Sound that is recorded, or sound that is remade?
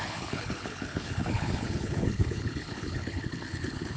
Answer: remade